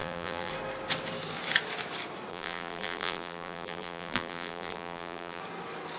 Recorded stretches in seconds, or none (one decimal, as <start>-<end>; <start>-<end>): 0.5-2.3; 5.4-6.0